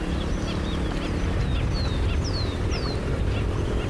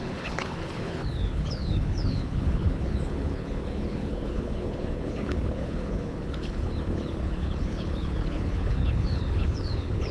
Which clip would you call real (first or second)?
first